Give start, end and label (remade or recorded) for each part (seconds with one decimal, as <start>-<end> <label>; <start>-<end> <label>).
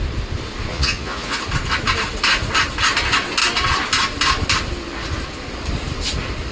0.0-0.7 recorded; 0.7-1.4 remade; 1.4-6.5 recorded